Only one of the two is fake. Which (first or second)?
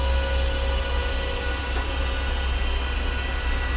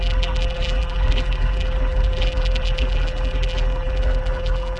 second